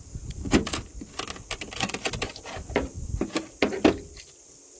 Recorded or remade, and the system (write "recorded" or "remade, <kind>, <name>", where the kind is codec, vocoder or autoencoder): recorded